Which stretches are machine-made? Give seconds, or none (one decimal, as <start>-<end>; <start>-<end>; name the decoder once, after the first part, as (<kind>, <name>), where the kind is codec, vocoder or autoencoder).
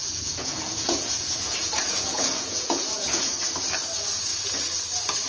0.0-3.2 (vocoder, Vocos)